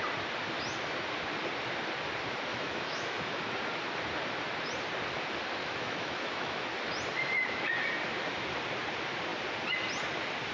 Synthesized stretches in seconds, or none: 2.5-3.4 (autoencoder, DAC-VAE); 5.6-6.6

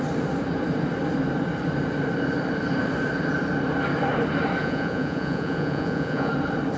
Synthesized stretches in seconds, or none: 4.6-6.3 (vocoder, Vocos)

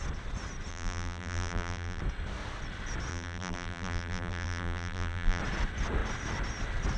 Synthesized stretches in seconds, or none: 0.7-2.0 (vocoder, BigVGAN v2); 3.1-5.4

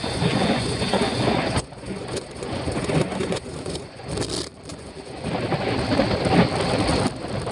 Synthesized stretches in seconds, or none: 0.0-4.1 (vocoder, Vocos); 4.7-5.3

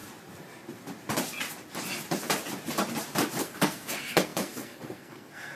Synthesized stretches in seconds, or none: 3.4-5.6 (codec, SNAC)

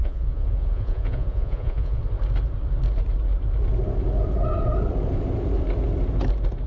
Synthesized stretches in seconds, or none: 0.0-2.0 (vocoder, Vocos)

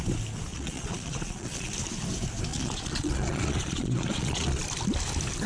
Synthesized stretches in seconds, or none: 0.5-1.7 (vocoder, Vocos); 2.5-4.6